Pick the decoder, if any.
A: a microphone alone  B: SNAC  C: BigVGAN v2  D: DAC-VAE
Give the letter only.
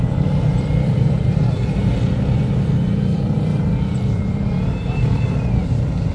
C